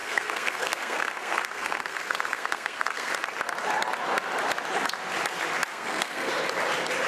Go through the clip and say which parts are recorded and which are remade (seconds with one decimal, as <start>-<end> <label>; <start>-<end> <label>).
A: 0.0-3.1 remade; 3.1-5.7 recorded; 5.7-6.3 remade; 6.3-7.1 recorded